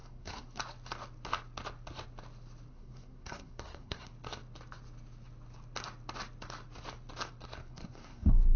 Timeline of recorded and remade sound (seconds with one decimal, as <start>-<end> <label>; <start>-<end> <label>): 0.0-0.6 remade; 0.6-2.7 recorded; 2.7-4.1 remade; 4.1-7.6 recorded; 7.6-8.6 remade